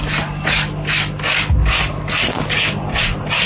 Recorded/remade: recorded